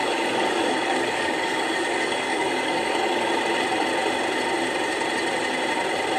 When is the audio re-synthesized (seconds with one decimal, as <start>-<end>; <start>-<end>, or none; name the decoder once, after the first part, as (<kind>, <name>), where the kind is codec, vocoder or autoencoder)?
0.0-3.3 (codec, DAC)